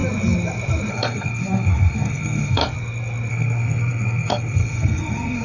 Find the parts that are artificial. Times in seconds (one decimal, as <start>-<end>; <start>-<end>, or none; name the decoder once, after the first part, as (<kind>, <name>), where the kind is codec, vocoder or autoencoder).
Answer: 0.9-2.6 (codec, SNAC); 3.3-5.4